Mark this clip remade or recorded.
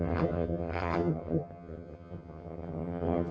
remade